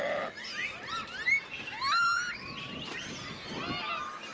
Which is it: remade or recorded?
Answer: recorded